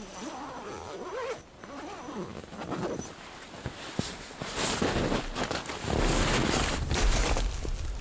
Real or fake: real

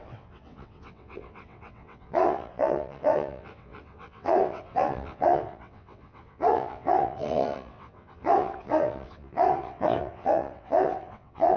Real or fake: fake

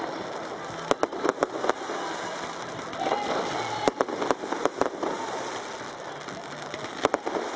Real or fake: real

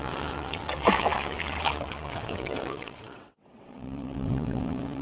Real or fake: fake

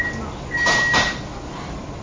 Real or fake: real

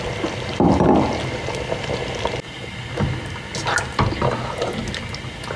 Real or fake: real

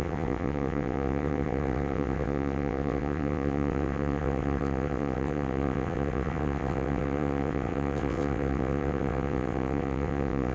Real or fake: fake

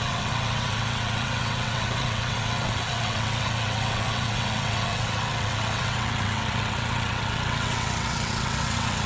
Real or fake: fake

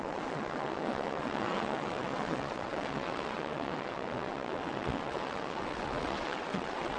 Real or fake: fake